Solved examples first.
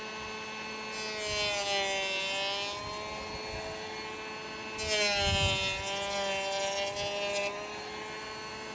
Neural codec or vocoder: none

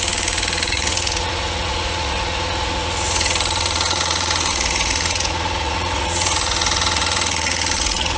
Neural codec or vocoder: vocoder, Vocos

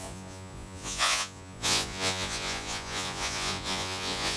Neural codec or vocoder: vocoder, Vocos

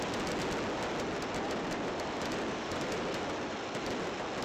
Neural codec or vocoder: none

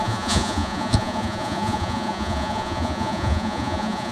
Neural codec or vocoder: vocoder, Vocos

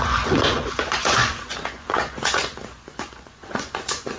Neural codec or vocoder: vocoder, Vocos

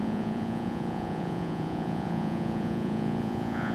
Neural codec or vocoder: vocoder, Vocos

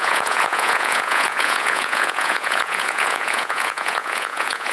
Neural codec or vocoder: vocoder, Vocos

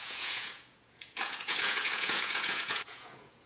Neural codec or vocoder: vocoder, Vocos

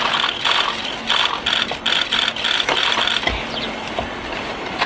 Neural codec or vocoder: none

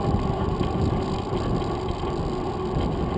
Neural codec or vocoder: none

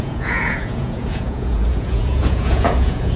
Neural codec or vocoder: vocoder, Vocos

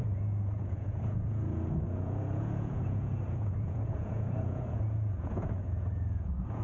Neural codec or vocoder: vocoder, Vocos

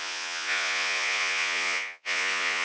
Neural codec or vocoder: vocoder, Vocos